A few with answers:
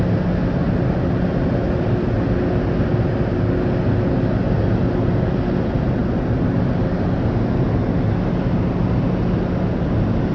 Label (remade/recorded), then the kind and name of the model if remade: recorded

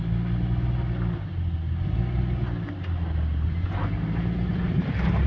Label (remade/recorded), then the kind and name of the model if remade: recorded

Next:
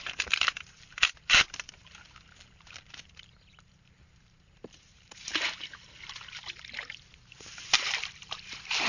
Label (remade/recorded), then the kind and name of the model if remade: remade, vocoder, BigVGAN v2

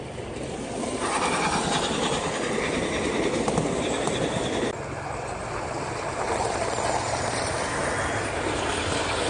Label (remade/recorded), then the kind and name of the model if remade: recorded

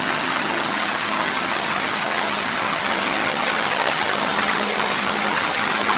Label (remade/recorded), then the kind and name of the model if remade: remade, vocoder, HiFi-GAN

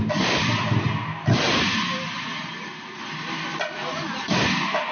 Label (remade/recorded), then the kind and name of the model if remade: recorded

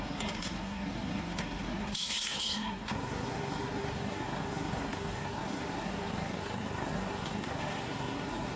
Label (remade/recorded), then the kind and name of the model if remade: remade, codec, SNAC